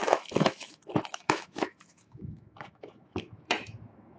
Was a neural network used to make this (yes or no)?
yes